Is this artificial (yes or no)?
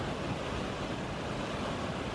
no